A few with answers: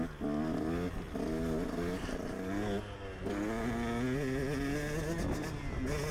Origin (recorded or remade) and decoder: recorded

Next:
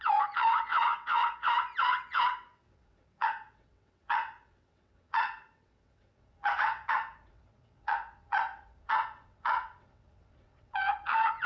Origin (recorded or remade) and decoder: remade, vocoder, WaveNeXt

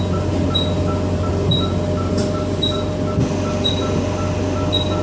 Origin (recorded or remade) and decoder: recorded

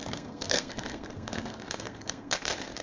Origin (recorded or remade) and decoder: remade, codec, SNAC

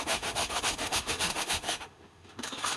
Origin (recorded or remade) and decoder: remade, autoencoder, DAC-VAE